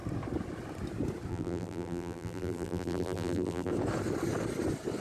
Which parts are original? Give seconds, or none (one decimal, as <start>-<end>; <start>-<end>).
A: 0.0-1.3; 3.7-5.0